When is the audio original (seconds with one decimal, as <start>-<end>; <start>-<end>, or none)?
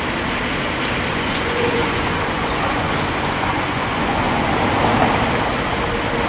0.0-1.1; 4.5-6.3